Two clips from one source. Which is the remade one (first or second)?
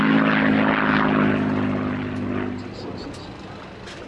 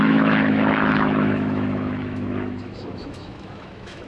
second